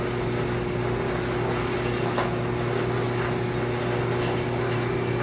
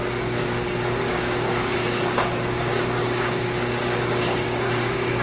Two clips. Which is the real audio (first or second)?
first